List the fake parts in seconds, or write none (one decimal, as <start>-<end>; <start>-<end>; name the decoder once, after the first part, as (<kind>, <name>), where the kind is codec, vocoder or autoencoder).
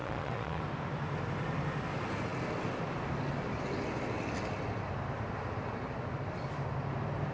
0.0-0.6 (vocoder, Vocos)